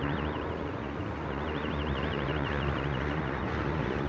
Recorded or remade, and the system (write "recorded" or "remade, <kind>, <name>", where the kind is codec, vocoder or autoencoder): remade, vocoder, Vocos